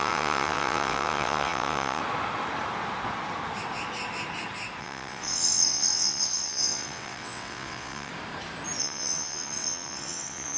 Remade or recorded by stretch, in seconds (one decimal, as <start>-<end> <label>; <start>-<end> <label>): 0.0-2.0 remade; 2.0-4.8 recorded; 4.8-8.1 remade; 8.1-8.8 recorded; 8.8-10.6 remade